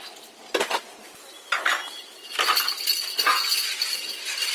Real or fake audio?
real